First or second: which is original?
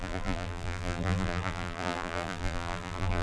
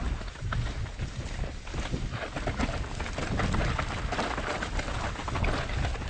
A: second